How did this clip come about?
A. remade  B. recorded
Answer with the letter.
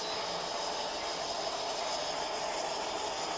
B